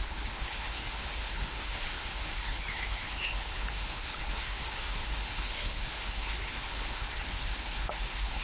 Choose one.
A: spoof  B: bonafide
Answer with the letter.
A